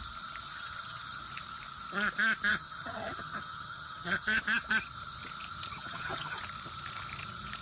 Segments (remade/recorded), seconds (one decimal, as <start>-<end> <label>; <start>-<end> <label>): 0.0-0.5 recorded; 0.5-1.2 remade; 1.2-2.5 recorded; 2.5-4.4 remade; 4.4-5.8 recorded; 5.8-6.4 remade; 6.4-7.6 recorded